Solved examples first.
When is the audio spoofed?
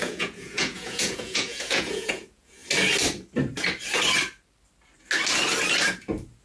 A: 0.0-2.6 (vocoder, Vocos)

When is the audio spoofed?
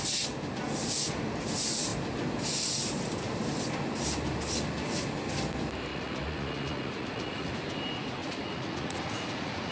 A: 5.9-7.5 (vocoder, Vocos); 8.2-9.7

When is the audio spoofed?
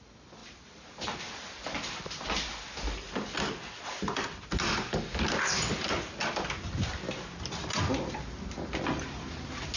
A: none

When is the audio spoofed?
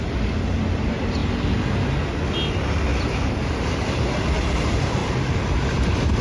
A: 0.0-1.2 (vocoder, BigVGAN v2); 2.5-5.0; 5.6-6.2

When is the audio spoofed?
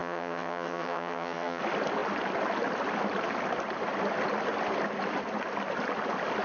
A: 0.0-1.6 (vocoder, HiFi-GAN)